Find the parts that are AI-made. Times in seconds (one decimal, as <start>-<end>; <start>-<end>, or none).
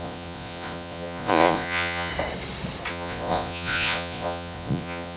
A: 0.0-2.1; 2.9-5.2